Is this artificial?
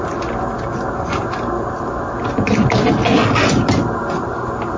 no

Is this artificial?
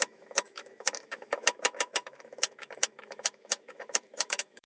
yes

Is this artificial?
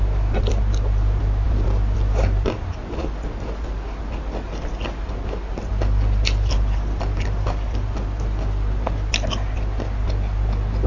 no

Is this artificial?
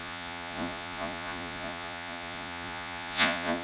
yes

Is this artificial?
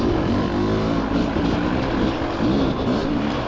no